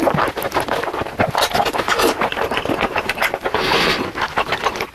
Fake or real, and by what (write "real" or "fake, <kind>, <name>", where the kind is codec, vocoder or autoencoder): real